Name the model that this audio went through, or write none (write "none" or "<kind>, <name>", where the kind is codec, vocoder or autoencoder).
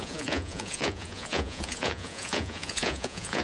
vocoder, Vocos